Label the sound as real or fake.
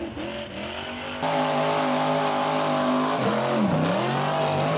real